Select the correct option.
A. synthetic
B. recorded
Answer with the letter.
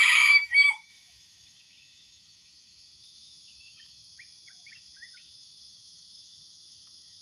A